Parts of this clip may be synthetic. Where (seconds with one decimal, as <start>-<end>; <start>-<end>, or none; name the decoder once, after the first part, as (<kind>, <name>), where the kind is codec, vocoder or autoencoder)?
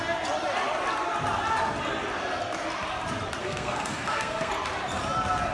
3.4-4.5 (codec, SNAC)